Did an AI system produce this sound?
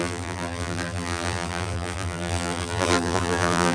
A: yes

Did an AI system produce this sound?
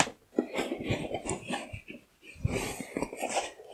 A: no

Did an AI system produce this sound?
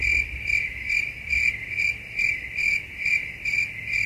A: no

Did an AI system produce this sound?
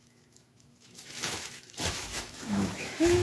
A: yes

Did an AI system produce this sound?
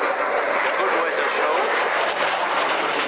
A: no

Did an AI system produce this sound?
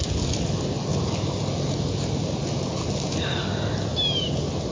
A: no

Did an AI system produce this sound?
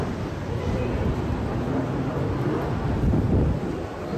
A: no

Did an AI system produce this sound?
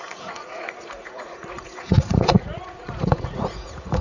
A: yes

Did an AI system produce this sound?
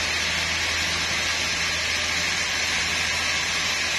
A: no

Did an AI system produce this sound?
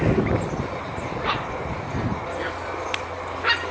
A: no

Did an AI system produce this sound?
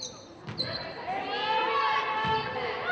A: no